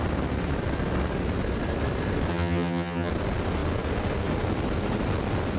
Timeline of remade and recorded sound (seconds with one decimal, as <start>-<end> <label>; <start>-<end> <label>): 0.0-2.3 recorded; 2.3-3.1 remade; 3.1-5.6 recorded